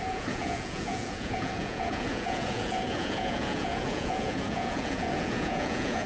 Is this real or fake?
fake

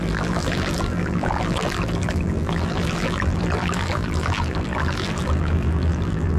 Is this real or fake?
fake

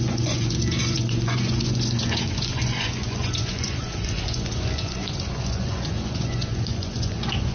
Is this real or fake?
fake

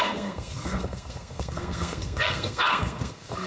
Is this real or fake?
fake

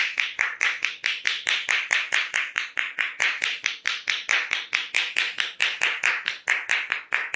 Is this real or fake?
real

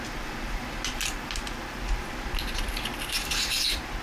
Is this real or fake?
real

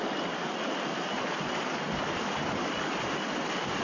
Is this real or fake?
real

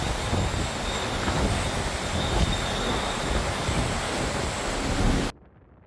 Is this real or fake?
real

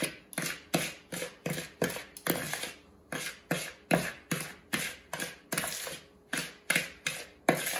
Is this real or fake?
real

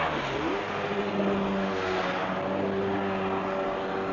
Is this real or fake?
real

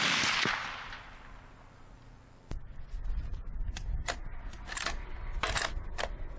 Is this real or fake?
real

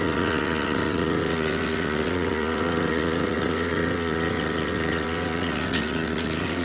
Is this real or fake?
fake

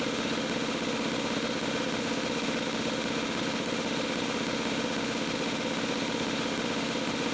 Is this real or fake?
fake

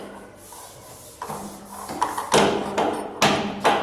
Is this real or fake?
real